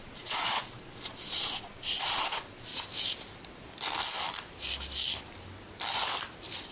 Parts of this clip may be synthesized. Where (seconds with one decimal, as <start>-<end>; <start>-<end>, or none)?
0.0-2.7